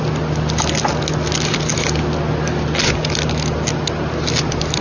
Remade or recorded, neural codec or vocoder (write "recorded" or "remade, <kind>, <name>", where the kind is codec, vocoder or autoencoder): recorded